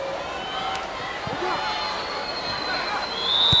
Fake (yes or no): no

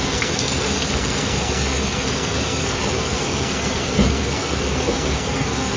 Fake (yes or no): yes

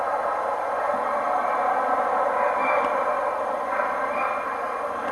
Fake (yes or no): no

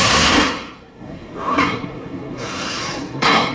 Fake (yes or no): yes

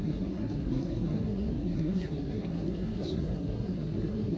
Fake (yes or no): yes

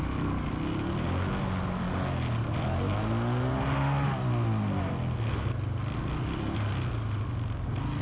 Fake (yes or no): no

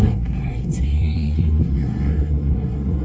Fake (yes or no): yes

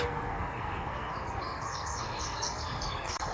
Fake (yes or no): yes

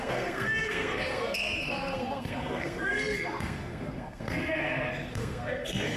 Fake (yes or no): yes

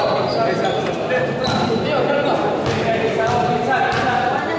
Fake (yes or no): no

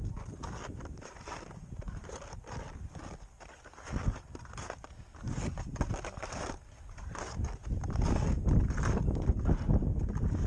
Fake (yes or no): no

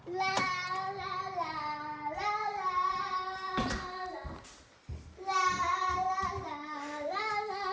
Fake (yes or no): no